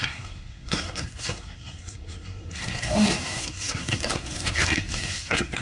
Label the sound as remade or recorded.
remade